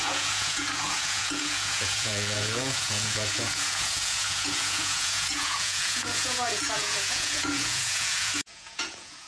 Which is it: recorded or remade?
remade